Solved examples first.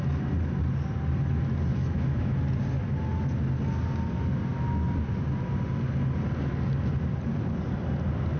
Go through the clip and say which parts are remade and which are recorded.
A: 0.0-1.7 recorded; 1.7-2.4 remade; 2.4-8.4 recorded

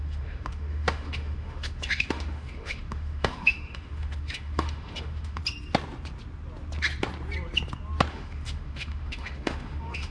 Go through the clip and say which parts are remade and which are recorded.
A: 0.0-5.4 remade; 5.4-8.1 recorded; 8.1-10.1 remade

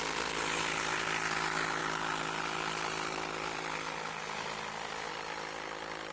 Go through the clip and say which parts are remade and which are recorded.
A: 0.0-6.1 recorded

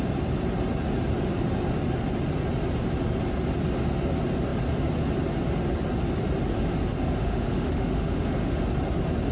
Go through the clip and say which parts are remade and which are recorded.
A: 0.0-7.2 recorded; 7.2-8.6 remade; 8.6-9.3 recorded

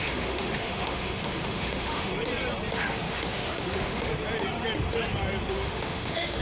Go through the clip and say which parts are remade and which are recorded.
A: 0.0-2.1 remade; 2.1-2.7 recorded; 2.7-4.1 remade; 4.1-5.5 recorded; 5.5-6.4 remade

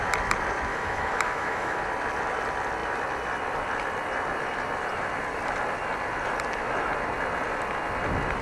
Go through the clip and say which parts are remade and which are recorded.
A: 0.0-0.7 recorded; 0.7-1.8 remade; 1.8-8.4 recorded

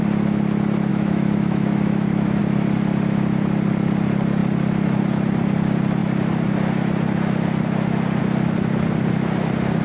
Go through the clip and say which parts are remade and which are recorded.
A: 0.0-0.9 recorded; 0.9-2.4 remade; 2.4-9.8 recorded